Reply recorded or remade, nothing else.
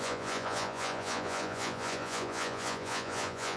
remade